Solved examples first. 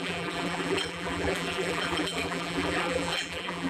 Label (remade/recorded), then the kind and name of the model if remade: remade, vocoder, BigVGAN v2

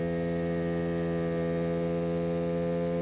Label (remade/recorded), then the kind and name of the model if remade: recorded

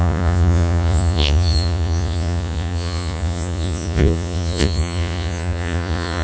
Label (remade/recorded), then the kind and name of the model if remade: remade, vocoder, Vocos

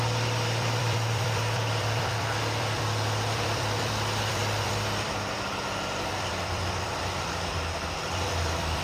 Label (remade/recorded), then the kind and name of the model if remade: remade, vocoder, BigVGAN v2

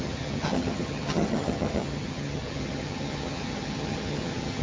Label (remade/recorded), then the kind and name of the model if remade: remade, vocoder, HiFi-GAN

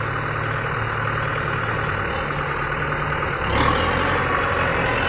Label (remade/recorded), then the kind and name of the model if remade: recorded